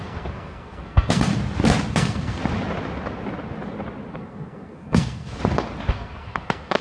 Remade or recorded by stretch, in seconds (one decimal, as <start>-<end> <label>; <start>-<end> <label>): 0.0-1.3 remade; 1.3-1.9 recorded; 1.9-2.4 remade; 2.4-4.1 recorded; 4.1-5.4 remade; 5.4-5.9 recorded; 5.9-6.8 remade